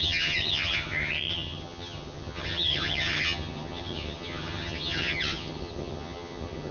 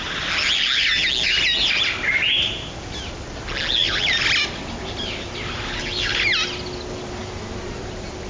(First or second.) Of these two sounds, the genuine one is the second